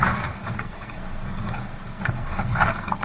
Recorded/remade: remade